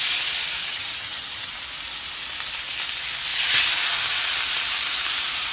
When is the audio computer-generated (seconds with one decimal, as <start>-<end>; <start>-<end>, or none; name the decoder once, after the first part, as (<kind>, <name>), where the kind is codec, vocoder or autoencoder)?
0.6-1.5 (vocoder, HiFi-GAN)